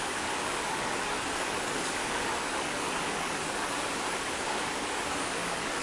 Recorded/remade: remade